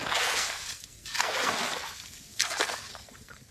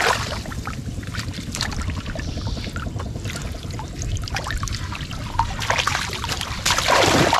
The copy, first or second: first